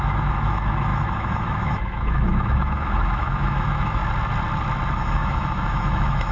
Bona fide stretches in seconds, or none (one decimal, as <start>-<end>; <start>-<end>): 4.0-5.0

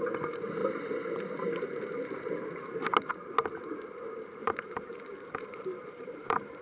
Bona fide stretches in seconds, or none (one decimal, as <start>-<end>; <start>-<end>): 0.0-4.4